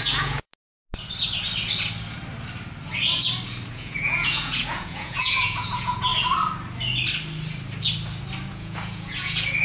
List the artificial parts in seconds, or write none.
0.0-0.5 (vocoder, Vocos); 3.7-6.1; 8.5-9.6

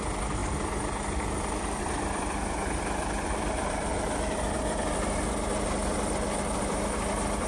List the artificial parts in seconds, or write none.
0.0-0.4 (vocoder, BigVGAN v2); 1.8-7.5

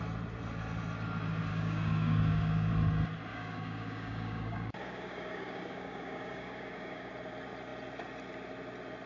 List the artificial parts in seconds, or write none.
1.5-2.7 (codec, DAC); 3.3-7.1

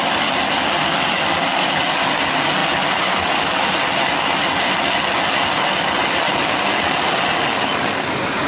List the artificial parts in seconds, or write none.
none

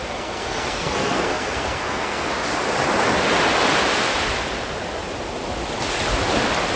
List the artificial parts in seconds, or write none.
0.0-2.3 (codec, SNAC)

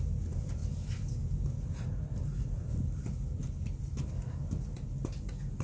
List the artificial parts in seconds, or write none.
none

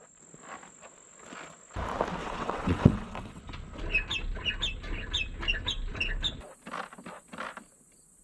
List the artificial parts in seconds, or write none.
2.2-3.4 (vocoder, WaveNeXt)